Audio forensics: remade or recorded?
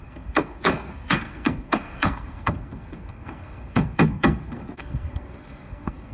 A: remade